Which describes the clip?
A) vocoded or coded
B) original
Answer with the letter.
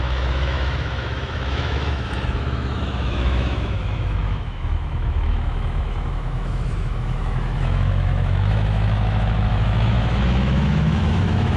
A